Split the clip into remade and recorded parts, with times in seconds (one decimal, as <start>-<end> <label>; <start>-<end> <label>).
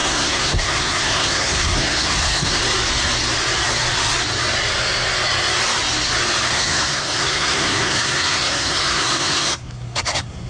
0.0-2.6 remade; 2.6-6.5 recorded; 6.5-10.5 remade